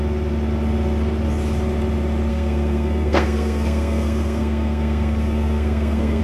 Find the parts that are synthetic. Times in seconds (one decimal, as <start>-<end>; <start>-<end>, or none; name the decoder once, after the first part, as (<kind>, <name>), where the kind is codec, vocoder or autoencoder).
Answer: 2.3-6.2 (codec, SNAC)